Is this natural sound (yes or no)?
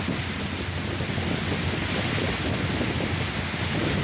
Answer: yes